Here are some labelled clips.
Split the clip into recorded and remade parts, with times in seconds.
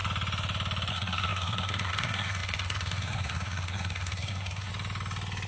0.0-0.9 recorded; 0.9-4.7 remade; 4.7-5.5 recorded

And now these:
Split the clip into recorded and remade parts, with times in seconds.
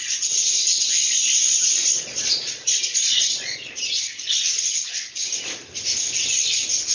0.0-1.0 recorded; 1.0-4.9 remade; 4.9-6.9 recorded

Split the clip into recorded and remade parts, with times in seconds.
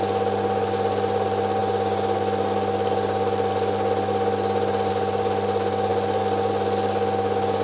0.0-7.6 recorded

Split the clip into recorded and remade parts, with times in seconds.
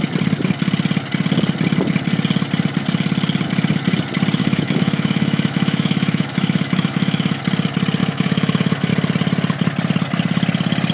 0.0-4.4 recorded; 4.4-7.4 remade; 7.4-8.0 recorded; 8.0-8.9 remade; 8.9-10.9 recorded